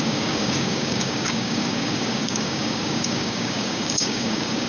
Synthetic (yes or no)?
yes